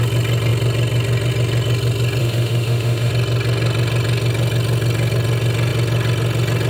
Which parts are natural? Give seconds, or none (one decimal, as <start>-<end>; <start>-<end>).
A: 0.0-2.2; 3.1-6.7